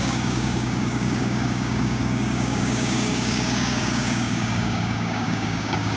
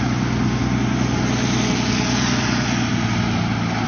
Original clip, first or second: second